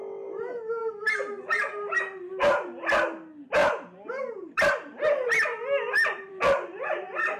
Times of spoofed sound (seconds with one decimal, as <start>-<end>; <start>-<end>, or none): 0.8-2.0; 3.6-6.4